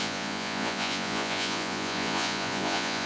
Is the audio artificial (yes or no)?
yes